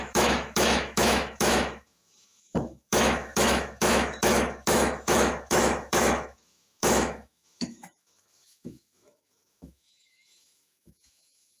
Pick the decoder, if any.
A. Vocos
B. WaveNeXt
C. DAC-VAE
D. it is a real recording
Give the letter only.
C